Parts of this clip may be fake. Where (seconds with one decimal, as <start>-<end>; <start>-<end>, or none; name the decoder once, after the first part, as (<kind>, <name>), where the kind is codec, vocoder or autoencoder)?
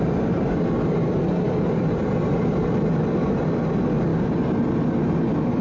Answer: none